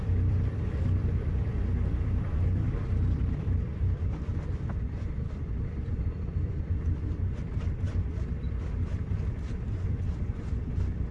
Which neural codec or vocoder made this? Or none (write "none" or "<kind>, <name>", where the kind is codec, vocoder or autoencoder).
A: vocoder, BigVGAN v2